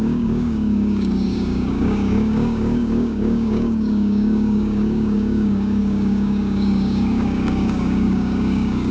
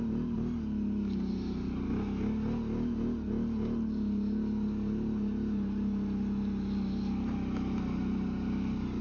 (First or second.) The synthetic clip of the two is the first